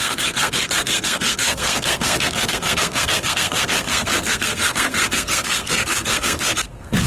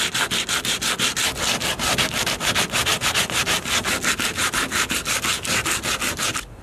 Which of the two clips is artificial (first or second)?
first